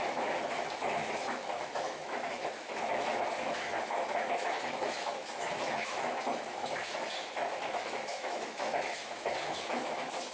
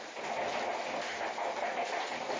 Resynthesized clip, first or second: first